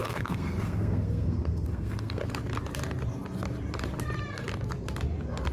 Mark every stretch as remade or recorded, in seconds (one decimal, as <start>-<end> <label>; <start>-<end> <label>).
0.0-2.2 remade; 2.2-5.5 recorded